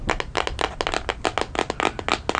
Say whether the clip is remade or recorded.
recorded